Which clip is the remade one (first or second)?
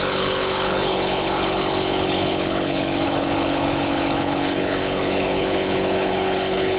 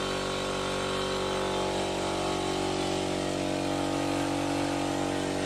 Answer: first